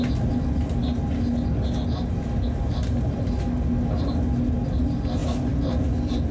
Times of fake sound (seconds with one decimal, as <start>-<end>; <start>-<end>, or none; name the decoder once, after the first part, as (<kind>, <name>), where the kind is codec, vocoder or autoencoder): none